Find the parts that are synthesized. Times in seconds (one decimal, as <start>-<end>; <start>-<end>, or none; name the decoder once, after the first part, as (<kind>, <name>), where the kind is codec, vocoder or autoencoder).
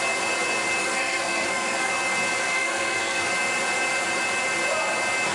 0.8-1.9 (codec, SNAC); 2.4-3.3